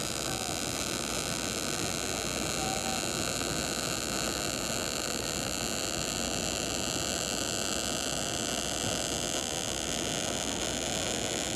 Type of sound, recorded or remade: recorded